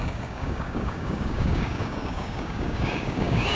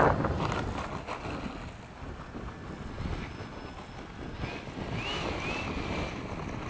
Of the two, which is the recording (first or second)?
second